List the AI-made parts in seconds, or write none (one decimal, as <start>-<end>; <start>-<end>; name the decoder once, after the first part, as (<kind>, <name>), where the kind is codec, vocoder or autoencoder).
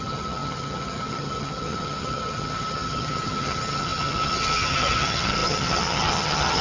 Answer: 0.0-6.6 (vocoder, HiFi-GAN)